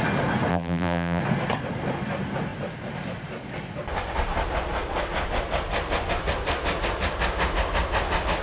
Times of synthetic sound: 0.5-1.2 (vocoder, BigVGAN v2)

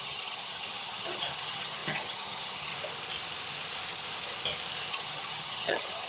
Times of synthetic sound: 0.0-2.7 (vocoder, HiFi-GAN); 4.9-6.1

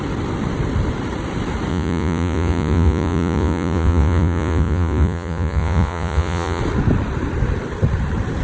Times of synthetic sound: 1.7-6.6 (vocoder, Vocos)

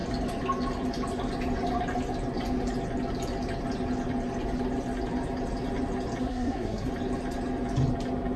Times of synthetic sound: 6.2-6.9 (codec, SNAC)

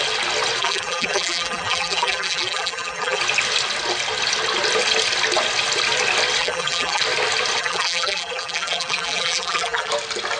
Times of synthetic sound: 0.6-3.2 (vocoder, BigVGAN v2); 6.4-7.0; 7.6-9.9